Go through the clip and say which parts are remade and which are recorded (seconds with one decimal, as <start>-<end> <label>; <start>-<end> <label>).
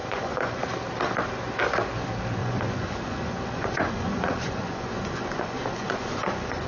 0.0-0.6 remade; 0.6-2.4 recorded; 2.4-6.7 remade